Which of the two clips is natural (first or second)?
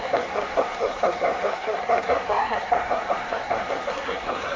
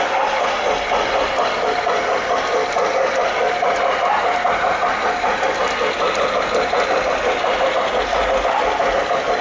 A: second